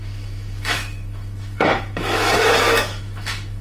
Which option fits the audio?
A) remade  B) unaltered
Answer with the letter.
A